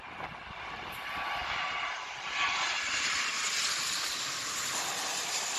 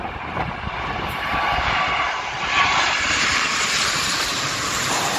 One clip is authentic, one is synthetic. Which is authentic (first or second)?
first